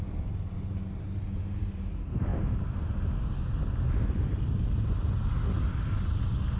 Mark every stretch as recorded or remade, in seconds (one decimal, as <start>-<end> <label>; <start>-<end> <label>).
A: 0.0-6.6 recorded